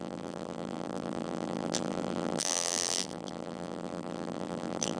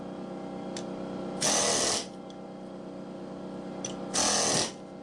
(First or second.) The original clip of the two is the second